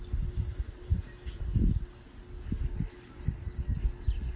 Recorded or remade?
recorded